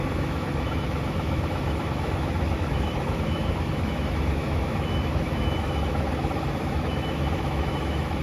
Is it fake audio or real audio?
fake